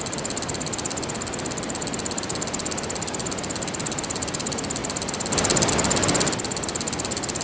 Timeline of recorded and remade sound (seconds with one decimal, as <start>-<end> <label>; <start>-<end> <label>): 0.0-7.4 recorded